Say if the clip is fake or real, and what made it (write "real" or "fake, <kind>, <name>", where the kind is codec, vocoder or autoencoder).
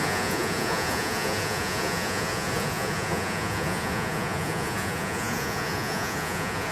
fake, vocoder, Vocos